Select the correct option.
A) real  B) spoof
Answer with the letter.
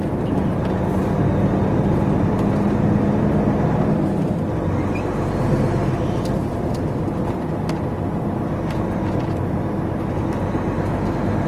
A